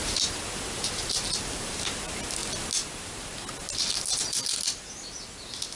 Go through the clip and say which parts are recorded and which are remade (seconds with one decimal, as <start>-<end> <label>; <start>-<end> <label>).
0.0-5.8 recorded